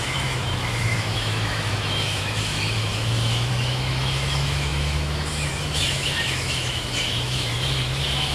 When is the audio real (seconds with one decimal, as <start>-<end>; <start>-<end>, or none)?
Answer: none